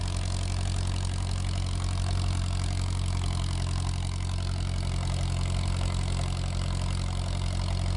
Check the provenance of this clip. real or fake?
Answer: real